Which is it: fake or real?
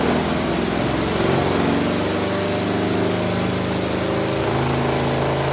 real